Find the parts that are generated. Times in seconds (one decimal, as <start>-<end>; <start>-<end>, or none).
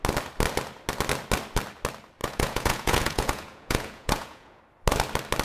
2.2-4.6